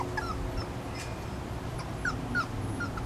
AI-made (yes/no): no